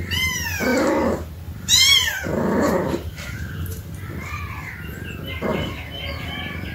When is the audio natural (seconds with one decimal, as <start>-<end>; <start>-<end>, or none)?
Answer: 0.0-0.7; 4.7-5.5; 6.1-6.7